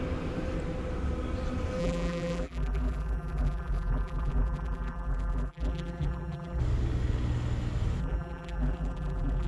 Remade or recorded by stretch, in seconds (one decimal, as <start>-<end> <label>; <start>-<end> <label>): 0.0-1.8 recorded; 1.8-6.6 remade; 6.6-8.0 recorded; 8.0-9.5 remade